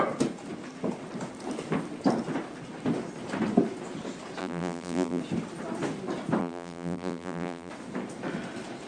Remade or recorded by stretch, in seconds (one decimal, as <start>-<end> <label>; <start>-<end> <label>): 0.0-4.4 recorded; 4.4-5.2 remade; 5.2-6.4 recorded; 6.4-7.7 remade; 7.7-8.9 recorded